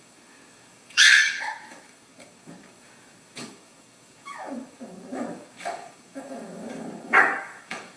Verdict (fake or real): fake